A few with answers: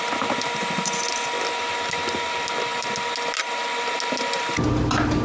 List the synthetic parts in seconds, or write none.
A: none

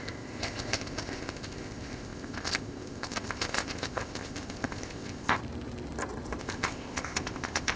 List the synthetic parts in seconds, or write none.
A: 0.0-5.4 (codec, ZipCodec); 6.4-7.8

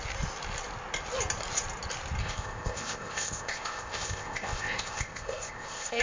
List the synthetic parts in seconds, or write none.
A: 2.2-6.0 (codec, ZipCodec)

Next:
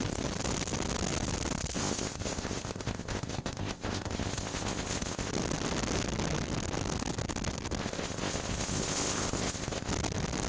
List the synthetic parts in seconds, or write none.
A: 1.8-5.3 (codec, ZipCodec); 7.8-9.9

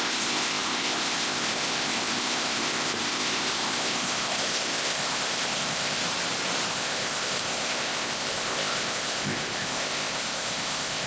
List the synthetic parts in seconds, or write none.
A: 0.0-6.0 (codec, ZipCodec); 6.7-11.1